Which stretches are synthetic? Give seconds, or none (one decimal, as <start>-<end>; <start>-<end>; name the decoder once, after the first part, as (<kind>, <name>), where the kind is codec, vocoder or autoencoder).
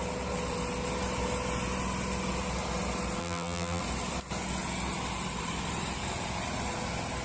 3.2-3.8 (vocoder, BigVGAN v2)